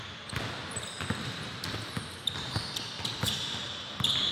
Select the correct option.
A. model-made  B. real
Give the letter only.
A